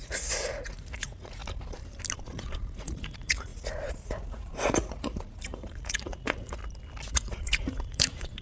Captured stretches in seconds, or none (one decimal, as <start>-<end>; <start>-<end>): 1.4-2.2; 6.6-7.1